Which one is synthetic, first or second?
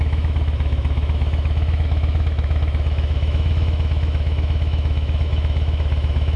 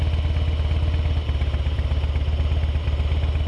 first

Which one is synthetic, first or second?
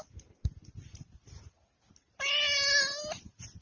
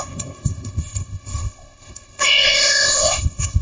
second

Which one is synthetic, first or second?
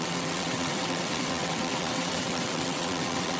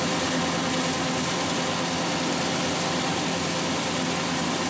first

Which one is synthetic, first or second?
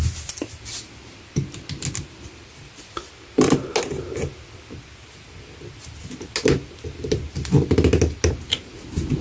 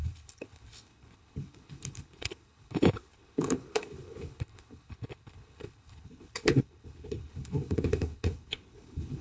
second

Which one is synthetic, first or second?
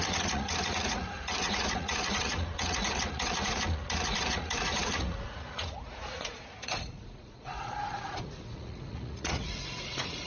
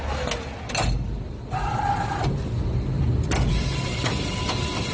first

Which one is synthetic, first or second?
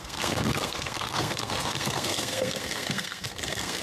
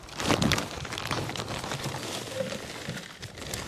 first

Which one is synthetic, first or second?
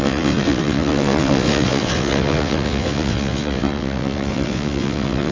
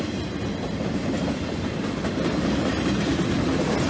first